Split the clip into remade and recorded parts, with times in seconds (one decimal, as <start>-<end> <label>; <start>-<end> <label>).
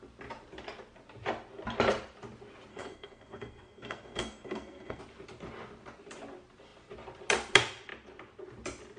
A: 0.0-2.7 recorded; 2.7-5.0 remade; 5.0-9.0 recorded